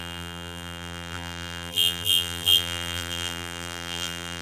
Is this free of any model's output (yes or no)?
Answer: no